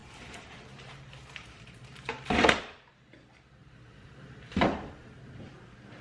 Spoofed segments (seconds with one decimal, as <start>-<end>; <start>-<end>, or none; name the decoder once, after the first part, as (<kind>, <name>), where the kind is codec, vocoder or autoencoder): 0.0-2.6 (vocoder, BigVGAN v2); 3.6-5.2